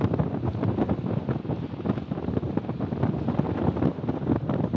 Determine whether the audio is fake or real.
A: real